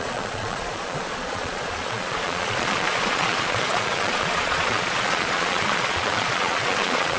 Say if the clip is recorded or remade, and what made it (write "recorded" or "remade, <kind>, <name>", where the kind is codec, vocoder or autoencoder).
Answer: remade, vocoder, Vocos